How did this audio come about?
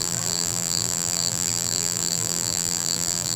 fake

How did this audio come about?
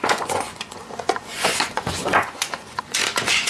fake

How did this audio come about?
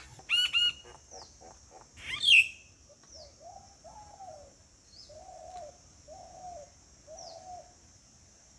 real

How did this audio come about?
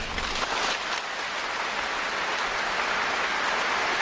real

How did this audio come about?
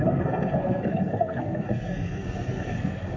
fake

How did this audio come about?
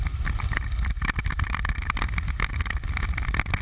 real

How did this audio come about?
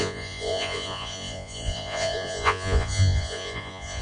fake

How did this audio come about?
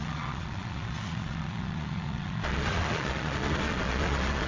fake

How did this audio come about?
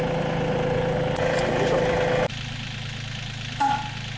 real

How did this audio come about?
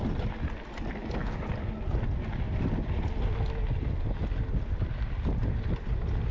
real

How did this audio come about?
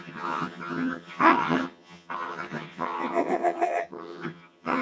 fake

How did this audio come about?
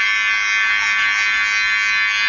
real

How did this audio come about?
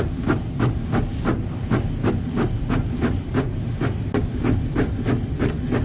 real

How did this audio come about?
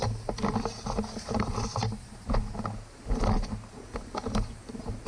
real